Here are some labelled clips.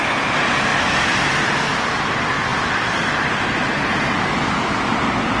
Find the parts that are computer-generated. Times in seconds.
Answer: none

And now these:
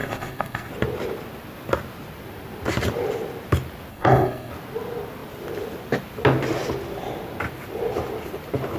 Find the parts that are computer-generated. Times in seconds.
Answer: 0.0-0.7 (codec, SNAC); 3.9-4.5

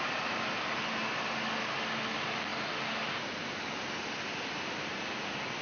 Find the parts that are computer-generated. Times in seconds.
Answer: none

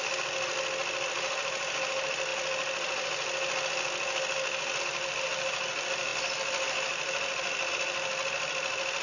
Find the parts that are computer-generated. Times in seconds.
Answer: none